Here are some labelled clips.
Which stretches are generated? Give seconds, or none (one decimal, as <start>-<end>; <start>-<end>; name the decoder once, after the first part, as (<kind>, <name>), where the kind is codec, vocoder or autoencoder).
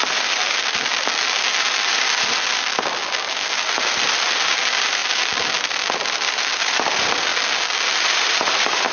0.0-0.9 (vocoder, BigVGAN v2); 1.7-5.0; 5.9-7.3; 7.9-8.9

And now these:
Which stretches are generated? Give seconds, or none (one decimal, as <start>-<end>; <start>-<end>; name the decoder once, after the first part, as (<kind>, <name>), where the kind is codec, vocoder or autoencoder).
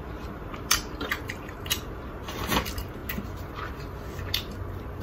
0.5-2.5 (vocoder, BigVGAN v2)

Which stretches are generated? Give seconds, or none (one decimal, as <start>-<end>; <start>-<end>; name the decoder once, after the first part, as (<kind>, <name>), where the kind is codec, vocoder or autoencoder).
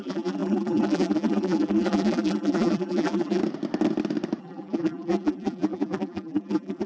0.0-3.4 (vocoder, BigVGAN v2); 4.4-6.9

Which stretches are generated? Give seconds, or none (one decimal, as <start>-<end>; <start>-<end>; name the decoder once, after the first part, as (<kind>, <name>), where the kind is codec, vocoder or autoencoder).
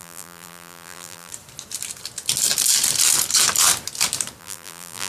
0.0-1.3 (vocoder, BigVGAN v2); 4.4-5.1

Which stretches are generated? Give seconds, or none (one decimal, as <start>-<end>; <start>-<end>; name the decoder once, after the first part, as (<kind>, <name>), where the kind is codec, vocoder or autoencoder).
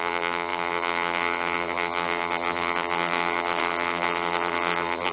0.0-5.1 (vocoder, BigVGAN v2)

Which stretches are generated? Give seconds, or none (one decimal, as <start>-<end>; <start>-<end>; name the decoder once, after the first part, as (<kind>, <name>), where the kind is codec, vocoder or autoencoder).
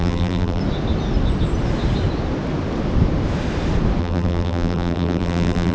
0.0-0.6 (vocoder, BigVGAN v2); 4.0-5.7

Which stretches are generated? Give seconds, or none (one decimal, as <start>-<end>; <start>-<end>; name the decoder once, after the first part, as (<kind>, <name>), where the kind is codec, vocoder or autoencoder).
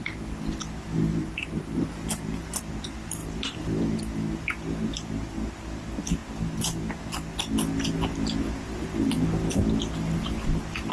1.1-2.6 (vocoder, BigVGAN v2); 3.2-4.0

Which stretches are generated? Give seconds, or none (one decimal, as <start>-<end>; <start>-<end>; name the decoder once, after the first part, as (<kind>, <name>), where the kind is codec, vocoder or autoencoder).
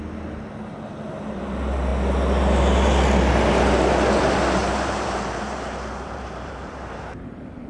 4.6-7.7 (vocoder, BigVGAN v2)